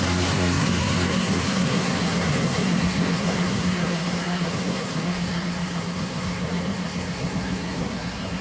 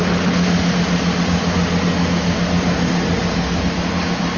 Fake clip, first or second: first